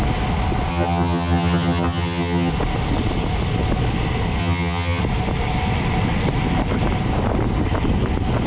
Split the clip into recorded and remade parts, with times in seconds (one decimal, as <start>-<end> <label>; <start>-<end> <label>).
0.0-0.7 recorded; 0.7-2.5 remade; 2.5-4.4 recorded; 4.4-5.0 remade; 5.0-8.5 recorded